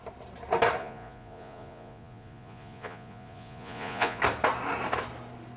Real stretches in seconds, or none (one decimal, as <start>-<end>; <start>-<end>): 0.0-0.8; 4.2-5.6